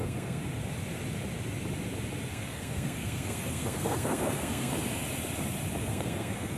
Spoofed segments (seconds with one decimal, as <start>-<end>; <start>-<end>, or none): 0.0-0.4; 2.3-4.7; 5.8-6.6